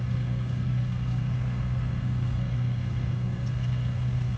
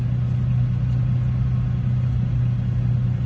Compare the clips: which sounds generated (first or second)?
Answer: first